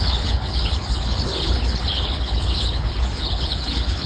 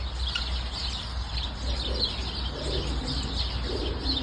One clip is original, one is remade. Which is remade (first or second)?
first